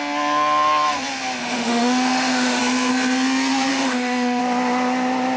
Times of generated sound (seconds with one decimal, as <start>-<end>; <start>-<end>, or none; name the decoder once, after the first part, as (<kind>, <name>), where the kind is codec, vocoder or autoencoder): 1.4-2.6 (autoencoder, DAC-VAE); 3.7-4.4